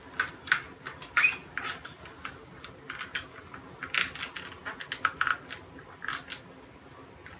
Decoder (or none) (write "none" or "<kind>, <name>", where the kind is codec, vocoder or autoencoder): none